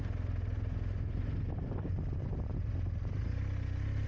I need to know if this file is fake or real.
real